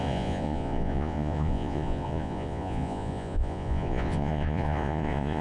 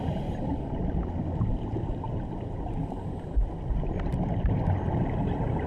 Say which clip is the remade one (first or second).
first